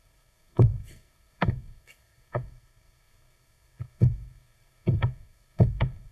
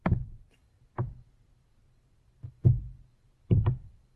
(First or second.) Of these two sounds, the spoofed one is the first